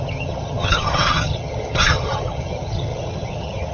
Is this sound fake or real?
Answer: fake